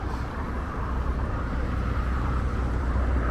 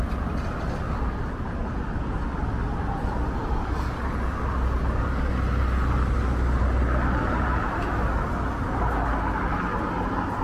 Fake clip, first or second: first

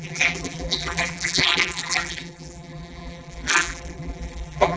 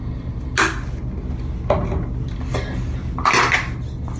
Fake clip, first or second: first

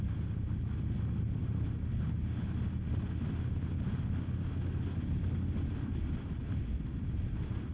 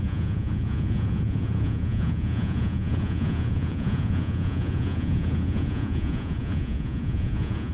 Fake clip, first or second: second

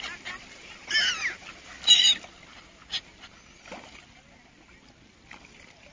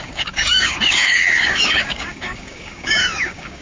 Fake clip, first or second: second